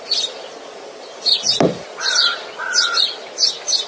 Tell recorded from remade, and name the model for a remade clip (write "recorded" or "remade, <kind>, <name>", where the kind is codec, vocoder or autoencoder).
recorded